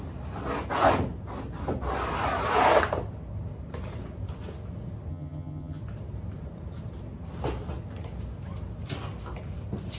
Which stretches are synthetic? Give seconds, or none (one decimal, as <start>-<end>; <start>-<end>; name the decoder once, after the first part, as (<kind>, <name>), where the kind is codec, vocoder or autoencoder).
5.1-5.8 (vocoder, HiFi-GAN)